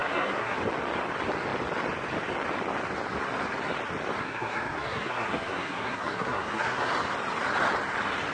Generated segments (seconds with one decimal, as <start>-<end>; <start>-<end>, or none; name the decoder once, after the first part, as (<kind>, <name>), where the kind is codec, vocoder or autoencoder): 0.0-0.6 (codec, SNAC); 4.2-6.9